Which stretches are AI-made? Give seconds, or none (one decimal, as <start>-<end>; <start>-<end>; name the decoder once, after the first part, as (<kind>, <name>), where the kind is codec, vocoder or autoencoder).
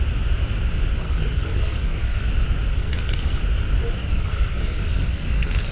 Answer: 1.0-2.3 (codec, SNAC); 2.7-3.4; 4.0-5.7